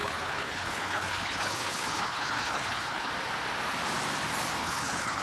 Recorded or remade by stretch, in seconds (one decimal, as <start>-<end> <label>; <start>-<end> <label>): 0.0-3.1 remade; 3.1-4.6 recorded; 4.6-5.2 remade